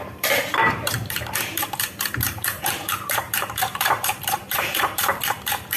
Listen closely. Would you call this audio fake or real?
fake